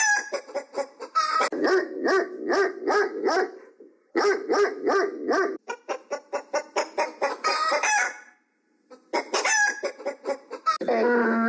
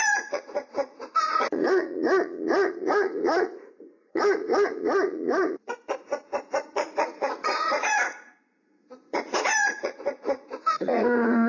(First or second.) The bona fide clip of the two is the first